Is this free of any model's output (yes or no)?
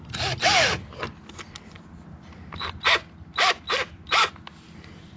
yes